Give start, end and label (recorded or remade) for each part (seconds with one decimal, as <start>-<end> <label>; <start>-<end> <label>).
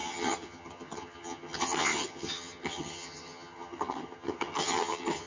0.0-5.3 remade